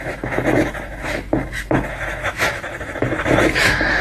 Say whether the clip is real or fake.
fake